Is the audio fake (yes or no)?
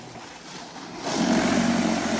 no